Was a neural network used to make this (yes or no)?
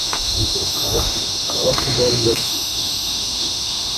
yes